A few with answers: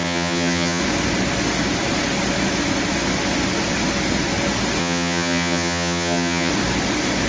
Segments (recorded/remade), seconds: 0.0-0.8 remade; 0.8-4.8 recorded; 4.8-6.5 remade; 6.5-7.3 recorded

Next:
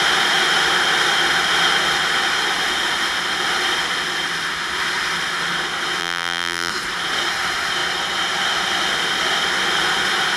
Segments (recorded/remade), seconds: 0.0-6.0 recorded; 6.0-6.7 remade; 6.7-10.4 recorded

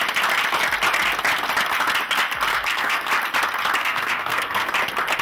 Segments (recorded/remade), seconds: 0.0-2.5 recorded; 2.5-3.1 remade; 3.1-3.8 recorded; 3.8-4.7 remade; 4.7-5.2 recorded

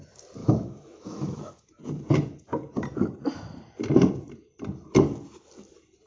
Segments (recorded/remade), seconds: 0.0-0.4 recorded; 0.4-1.8 remade; 1.8-6.1 recorded

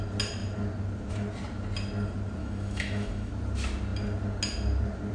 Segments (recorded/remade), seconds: 0.0-2.4 recorded; 2.4-3.3 remade; 3.3-5.1 recorded

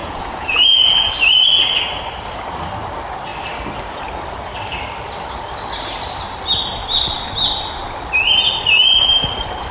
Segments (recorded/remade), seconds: 0.0-1.1 remade; 1.1-9.7 recorded

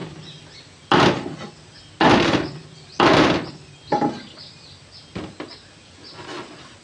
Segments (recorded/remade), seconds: 0.0-6.8 recorded

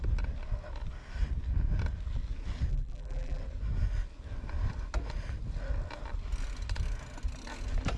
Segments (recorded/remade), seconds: 0.0-2.7 recorded; 2.7-3.4 remade; 3.4-8.0 recorded